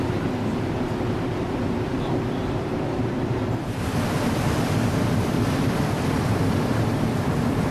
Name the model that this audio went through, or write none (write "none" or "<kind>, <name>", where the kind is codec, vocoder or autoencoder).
vocoder, BigVGAN v2